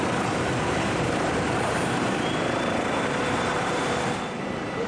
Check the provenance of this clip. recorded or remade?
remade